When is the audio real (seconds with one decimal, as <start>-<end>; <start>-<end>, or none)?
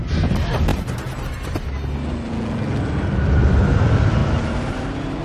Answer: 0.0-4.2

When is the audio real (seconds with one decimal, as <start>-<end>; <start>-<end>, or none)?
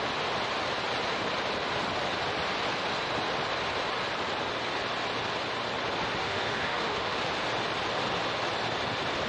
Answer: 0.0-6.2; 7.2-9.3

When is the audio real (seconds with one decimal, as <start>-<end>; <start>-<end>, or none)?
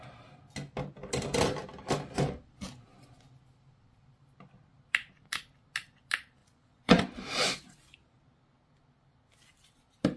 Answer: 0.0-6.4; 7.0-10.2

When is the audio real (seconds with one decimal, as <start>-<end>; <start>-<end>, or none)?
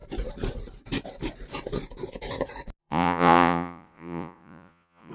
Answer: 0.0-2.8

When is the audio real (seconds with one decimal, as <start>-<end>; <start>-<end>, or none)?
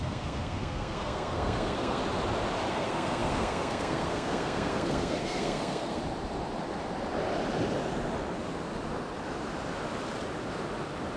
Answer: 2.0-2.7; 6.0-11.2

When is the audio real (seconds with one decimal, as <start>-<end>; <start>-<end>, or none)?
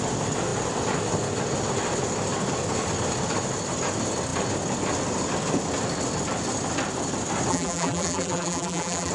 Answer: 0.0-7.5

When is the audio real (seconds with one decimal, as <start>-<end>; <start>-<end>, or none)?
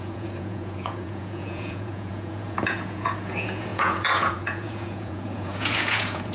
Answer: none